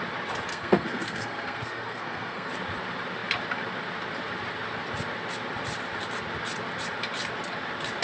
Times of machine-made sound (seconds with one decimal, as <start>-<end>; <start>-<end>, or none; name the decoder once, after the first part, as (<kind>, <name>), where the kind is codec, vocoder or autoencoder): 0.5-2.5 (codec, SNAC)